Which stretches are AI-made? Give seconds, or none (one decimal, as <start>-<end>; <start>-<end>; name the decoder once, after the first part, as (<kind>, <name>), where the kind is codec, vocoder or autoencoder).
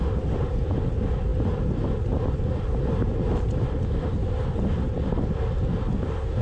none